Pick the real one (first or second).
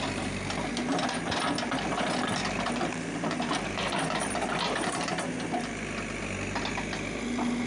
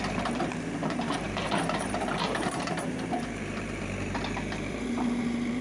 first